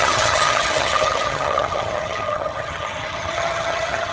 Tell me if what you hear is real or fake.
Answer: fake